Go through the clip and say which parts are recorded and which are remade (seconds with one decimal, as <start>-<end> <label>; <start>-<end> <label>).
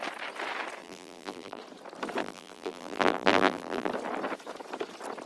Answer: 0.0-0.8 recorded; 0.8-1.6 remade; 1.6-2.2 recorded; 2.2-3.9 remade; 3.9-5.3 recorded